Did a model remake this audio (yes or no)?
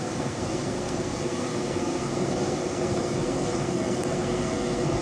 yes